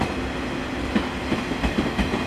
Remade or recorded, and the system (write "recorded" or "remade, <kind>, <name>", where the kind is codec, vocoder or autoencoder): recorded